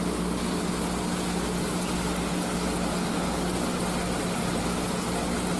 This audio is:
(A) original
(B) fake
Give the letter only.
A